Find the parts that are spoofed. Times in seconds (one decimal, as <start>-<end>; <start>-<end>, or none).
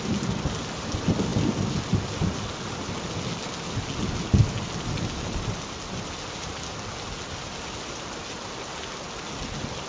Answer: none